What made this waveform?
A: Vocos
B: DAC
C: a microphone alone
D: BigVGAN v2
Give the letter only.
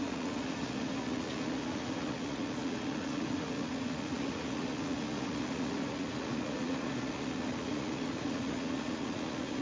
A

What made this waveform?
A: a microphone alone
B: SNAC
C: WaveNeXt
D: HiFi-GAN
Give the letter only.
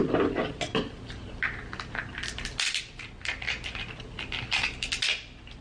A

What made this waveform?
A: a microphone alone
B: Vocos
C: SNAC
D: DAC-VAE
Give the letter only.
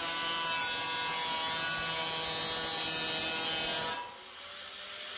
A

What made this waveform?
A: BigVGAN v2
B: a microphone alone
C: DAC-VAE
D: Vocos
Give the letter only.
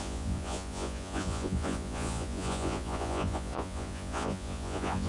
D